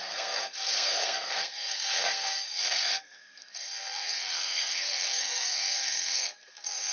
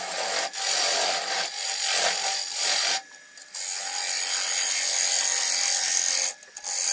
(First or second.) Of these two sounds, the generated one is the first